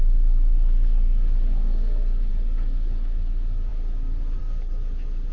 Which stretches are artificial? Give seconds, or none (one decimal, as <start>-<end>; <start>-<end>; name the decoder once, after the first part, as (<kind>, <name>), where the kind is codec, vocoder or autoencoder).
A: none